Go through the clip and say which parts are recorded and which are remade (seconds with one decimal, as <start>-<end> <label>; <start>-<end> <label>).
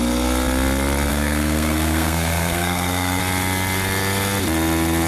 0.0-1.1 recorded; 1.1-3.2 remade; 3.2-5.1 recorded